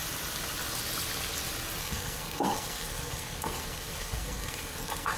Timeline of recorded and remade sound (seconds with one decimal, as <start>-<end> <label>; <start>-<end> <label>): 0.0-1.8 recorded; 1.8-5.2 remade